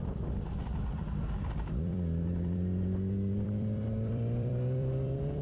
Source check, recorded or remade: remade